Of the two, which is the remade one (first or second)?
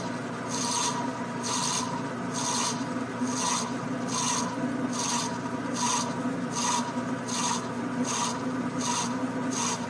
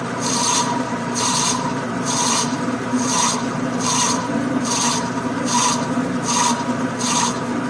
second